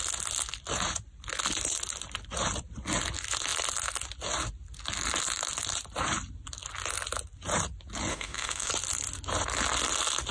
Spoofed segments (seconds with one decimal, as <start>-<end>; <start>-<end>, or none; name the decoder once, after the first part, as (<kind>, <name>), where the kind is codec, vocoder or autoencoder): 8.1-8.7 (autoencoder, DAC-VAE)